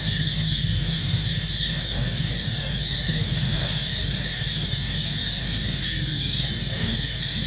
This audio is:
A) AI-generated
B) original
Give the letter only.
A